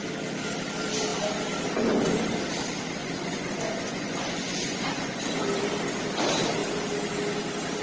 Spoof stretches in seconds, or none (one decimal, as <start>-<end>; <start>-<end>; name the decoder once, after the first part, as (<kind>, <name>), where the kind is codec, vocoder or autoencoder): 3.0-5.4 (vocoder, Vocos)